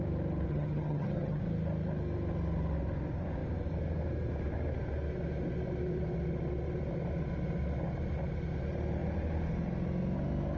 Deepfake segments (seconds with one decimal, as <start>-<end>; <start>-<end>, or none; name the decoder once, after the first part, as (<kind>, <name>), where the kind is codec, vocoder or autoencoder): 0.5-1.4 (vocoder, HiFi-GAN)